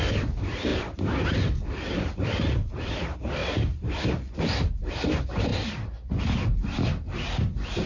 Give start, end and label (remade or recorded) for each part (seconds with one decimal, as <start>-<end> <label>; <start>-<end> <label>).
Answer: 0.0-3.4 remade; 3.4-4.4 recorded; 4.4-7.9 remade